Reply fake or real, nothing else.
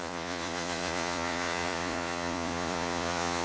fake